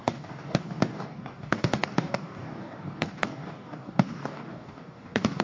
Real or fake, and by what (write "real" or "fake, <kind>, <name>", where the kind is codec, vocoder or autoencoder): fake, codec, DAC